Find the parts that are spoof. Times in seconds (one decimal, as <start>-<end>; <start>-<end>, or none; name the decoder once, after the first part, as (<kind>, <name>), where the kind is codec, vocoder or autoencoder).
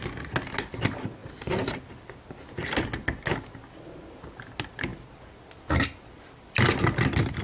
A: 1.2-1.8 (vocoder, BigVGAN v2)